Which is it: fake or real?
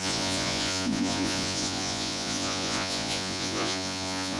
fake